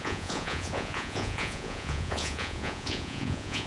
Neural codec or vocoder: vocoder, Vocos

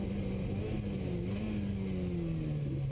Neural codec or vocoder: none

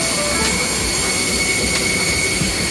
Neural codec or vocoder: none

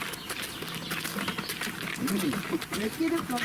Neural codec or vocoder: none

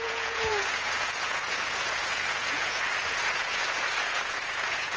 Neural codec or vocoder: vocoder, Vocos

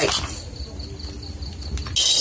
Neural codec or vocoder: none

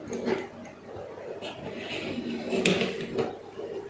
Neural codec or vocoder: none